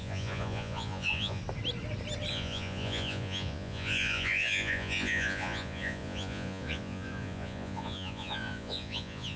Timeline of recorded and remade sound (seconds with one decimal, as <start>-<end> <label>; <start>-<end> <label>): 0.0-1.4 remade; 1.4-2.3 recorded; 2.3-9.4 remade